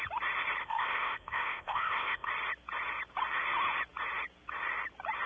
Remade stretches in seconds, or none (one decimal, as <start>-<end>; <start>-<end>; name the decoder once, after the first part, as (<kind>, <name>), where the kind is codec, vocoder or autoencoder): 0.6-2.3 (codec, ZipCodec)